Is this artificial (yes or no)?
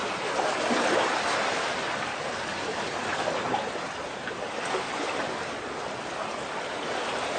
no